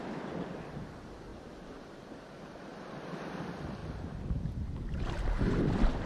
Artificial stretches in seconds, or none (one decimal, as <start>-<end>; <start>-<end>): 1.3-3.4; 3.8-5.1